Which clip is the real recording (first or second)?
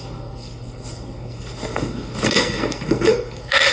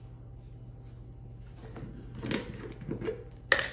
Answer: second